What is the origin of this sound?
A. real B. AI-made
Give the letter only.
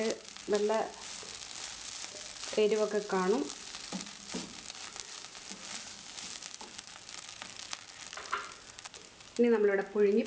A